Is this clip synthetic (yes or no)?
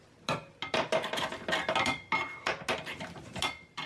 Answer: no